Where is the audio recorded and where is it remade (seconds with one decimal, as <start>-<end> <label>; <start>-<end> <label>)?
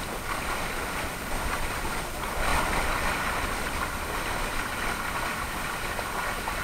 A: 0.0-2.5 recorded; 2.5-3.6 remade; 3.6-6.6 recorded